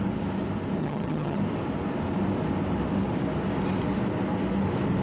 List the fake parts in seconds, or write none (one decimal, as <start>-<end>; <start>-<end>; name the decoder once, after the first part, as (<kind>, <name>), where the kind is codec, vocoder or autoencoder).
0.8-1.4 (vocoder, HiFi-GAN)